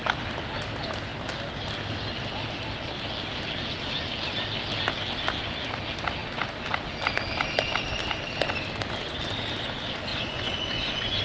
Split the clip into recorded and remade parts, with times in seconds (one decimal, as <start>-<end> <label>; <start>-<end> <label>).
0.0-10.1 recorded; 10.1-11.2 remade